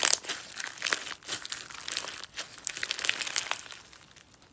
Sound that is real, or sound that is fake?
real